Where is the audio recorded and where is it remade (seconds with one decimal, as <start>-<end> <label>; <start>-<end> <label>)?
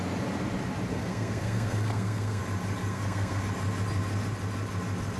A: 0.0-0.9 recorded; 0.9-2.4 remade; 2.4-2.9 recorded; 2.9-3.4 remade; 3.4-5.2 recorded